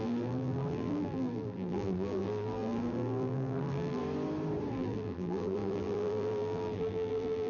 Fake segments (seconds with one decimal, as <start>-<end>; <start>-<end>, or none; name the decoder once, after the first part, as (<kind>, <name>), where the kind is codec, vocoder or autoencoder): 0.0-4.0 (vocoder, BigVGAN v2); 4.7-7.5